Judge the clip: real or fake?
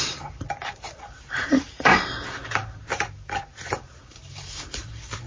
fake